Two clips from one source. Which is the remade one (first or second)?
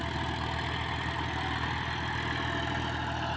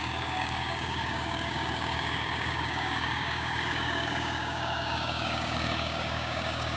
second